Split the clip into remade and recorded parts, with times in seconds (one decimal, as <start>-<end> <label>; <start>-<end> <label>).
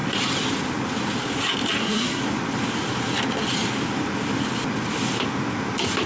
0.0-1.8 recorded; 1.8-2.2 remade; 2.2-6.1 recorded